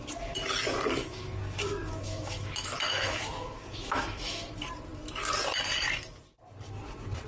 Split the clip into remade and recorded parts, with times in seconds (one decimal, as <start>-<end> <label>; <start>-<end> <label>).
0.0-1.0 recorded; 1.0-4.5 remade; 4.5-7.3 recorded